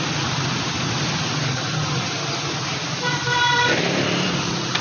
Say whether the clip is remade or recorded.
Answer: remade